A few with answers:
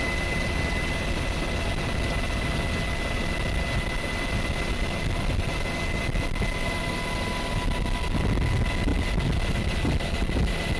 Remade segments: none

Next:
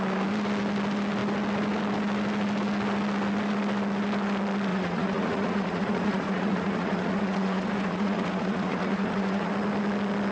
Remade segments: 4.7-9.5 (vocoder, Vocos)

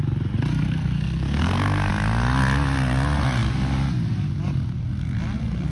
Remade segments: 0.5-1.9 (codec, SNAC)

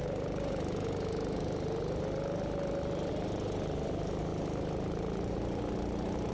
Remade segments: none